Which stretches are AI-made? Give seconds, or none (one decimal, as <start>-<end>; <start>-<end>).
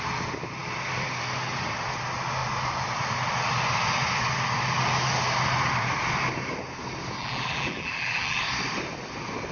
7.2-8.4